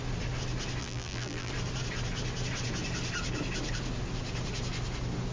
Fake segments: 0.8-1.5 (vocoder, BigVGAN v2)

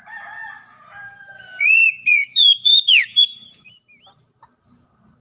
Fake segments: 0.7-3.8 (vocoder, Vocos)

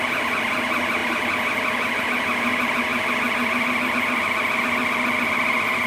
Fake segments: none

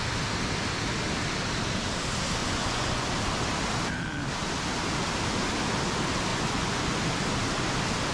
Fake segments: 2.4-3.1 (vocoder, Vocos); 6.3-7.0